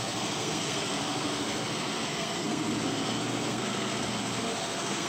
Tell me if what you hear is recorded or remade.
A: remade